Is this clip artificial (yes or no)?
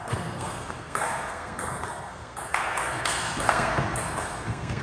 yes